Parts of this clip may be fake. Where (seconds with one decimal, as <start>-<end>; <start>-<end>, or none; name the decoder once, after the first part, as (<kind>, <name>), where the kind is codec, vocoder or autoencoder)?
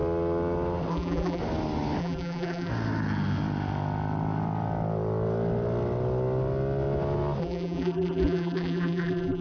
0.9-1.4 (vocoder, BigVGAN v2); 2.0-2.7; 7.4-9.4